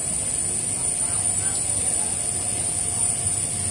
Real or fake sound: real